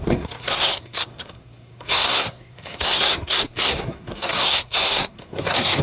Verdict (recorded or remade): remade